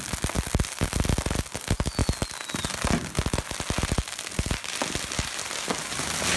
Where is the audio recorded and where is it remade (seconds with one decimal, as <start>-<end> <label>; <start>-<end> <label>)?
0.0-6.4 recorded